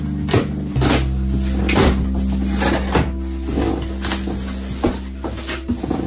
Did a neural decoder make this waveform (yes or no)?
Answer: no